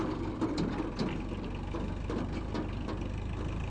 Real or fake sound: real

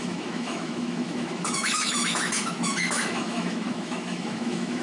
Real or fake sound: fake